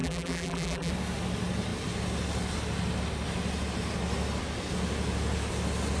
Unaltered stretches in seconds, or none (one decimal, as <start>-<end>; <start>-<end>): 0.9-6.0